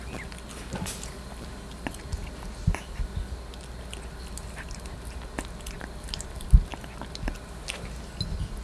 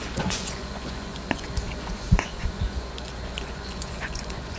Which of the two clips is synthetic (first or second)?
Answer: second